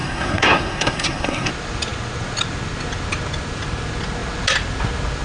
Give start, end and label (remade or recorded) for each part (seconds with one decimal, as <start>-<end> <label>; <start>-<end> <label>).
0.0-1.5 remade; 1.5-5.2 recorded